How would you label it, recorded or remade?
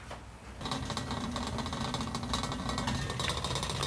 recorded